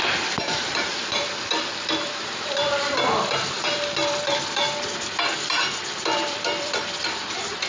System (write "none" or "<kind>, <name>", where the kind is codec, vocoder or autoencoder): vocoder, BigVGAN v2